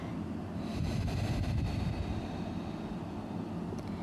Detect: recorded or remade remade